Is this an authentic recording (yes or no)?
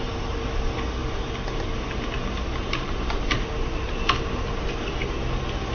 yes